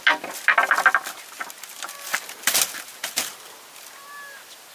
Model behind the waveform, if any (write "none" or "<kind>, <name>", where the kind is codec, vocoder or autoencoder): none